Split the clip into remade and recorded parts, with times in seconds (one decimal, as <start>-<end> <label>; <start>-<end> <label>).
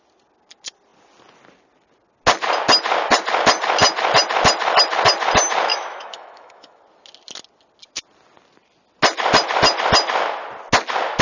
0.0-5.7 recorded; 5.7-6.8 remade; 6.8-11.2 recorded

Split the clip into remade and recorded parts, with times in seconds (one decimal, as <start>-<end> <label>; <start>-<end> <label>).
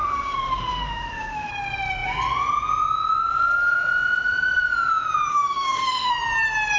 0.0-1.5 remade; 1.5-5.3 recorded; 5.3-6.1 remade; 6.1-6.8 recorded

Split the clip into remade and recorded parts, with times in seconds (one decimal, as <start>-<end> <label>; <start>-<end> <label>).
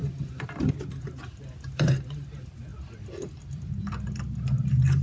0.0-5.0 recorded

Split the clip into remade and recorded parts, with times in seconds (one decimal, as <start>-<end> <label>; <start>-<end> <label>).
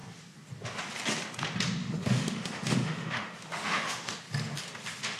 0.0-1.8 recorded; 1.8-4.1 remade; 4.1-5.2 recorded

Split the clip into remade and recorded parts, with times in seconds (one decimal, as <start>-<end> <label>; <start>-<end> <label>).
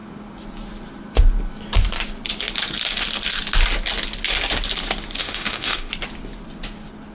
0.0-5.2 recorded; 5.2-5.9 remade; 5.9-7.1 recorded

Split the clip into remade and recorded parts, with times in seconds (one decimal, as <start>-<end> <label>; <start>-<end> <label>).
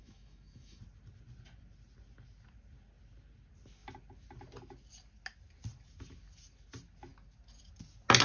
0.0-0.8 remade; 0.8-8.2 recorded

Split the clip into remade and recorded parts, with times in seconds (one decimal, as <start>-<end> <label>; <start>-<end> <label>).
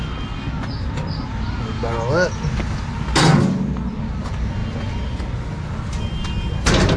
0.0-7.0 recorded